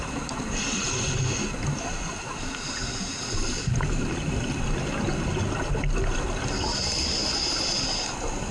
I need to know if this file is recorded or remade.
recorded